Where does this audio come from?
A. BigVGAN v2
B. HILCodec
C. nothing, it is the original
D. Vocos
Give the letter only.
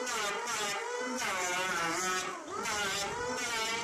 A